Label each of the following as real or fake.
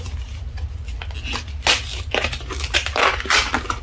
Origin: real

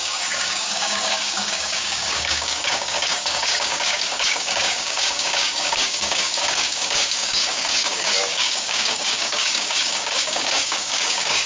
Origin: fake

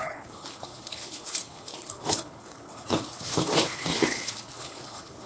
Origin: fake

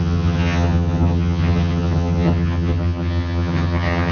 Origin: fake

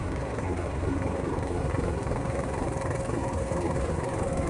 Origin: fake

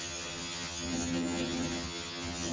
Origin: fake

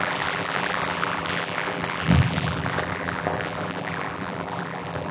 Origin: fake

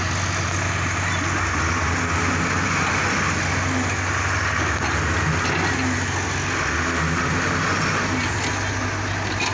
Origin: real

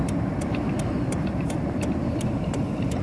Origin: fake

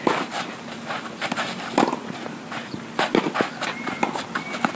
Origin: real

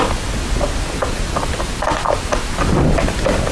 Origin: real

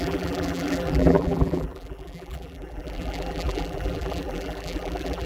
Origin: fake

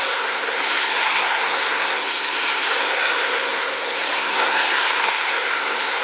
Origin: fake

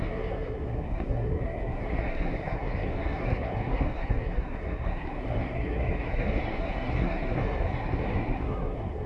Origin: fake